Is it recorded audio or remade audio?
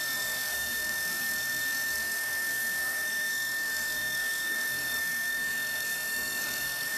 remade